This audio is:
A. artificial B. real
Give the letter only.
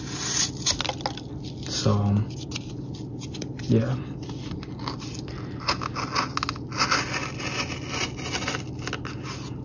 B